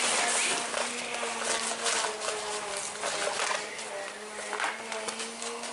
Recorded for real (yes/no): yes